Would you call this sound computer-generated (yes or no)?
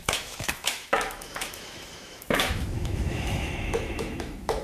yes